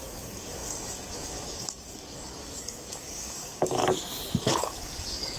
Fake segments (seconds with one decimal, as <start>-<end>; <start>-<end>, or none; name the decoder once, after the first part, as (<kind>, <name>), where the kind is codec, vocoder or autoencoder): 0.0-3.8 (codec, DAC); 4.4-5.4